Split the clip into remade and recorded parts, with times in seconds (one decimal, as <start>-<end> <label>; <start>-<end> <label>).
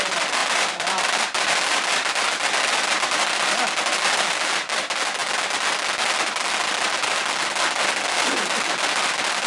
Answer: 0.0-0.4 recorded; 0.4-4.2 remade; 4.2-9.5 recorded